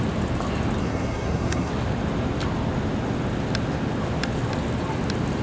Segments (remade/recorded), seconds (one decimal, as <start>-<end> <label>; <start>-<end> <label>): 0.0-0.8 recorded; 0.8-1.7 remade; 1.7-5.4 recorded

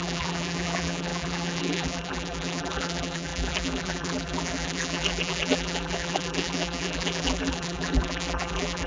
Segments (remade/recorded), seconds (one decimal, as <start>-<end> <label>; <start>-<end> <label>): 0.0-8.9 remade